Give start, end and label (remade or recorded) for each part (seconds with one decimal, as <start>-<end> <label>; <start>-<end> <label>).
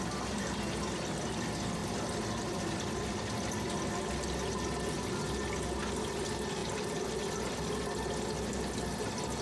0.0-9.4 recorded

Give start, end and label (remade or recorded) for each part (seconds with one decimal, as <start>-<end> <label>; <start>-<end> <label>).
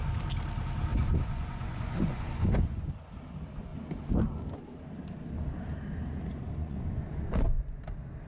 0.0-0.9 recorded; 0.9-2.9 remade; 2.9-6.3 recorded; 6.3-7.8 remade; 7.8-8.3 recorded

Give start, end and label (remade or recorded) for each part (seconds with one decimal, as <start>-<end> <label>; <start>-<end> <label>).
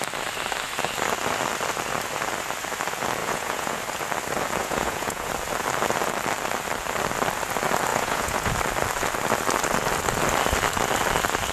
0.0-3.2 recorded; 3.2-3.8 remade; 3.8-4.6 recorded; 4.6-5.3 remade; 5.3-7.9 recorded; 7.9-8.5 remade; 8.5-11.5 recorded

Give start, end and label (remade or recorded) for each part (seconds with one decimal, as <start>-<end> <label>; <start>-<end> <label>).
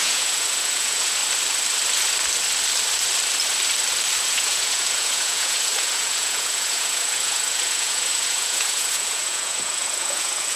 0.0-1.2 remade; 1.2-4.2 recorded; 4.2-10.6 remade